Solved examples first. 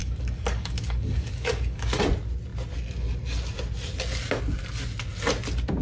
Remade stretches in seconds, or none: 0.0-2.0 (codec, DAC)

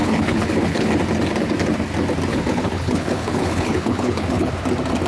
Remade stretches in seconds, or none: 0.0-0.9 (codec, HILCodec); 2.3-4.5

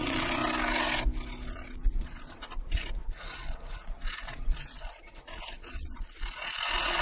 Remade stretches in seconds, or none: 0.0-0.4 (vocoder, Vocos); 1.5-7.0

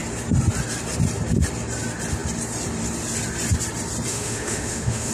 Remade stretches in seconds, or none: 4.1-5.1 (autoencoder, DAC-VAE)

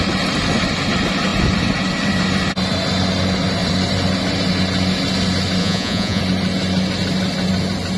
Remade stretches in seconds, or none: 5.6-6.2 (vocoder, Vocos)